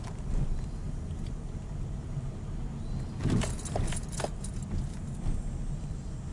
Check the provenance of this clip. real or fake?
real